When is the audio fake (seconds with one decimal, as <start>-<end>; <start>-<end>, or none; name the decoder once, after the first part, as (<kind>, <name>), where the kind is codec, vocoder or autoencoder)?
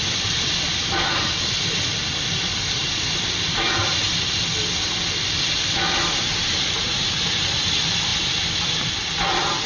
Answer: 0.0-8.1 (vocoder, BigVGAN v2); 8.8-9.7